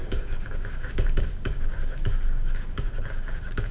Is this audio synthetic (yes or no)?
yes